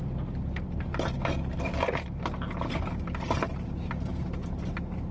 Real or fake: real